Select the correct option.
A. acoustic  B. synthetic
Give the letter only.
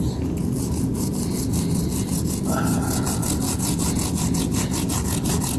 A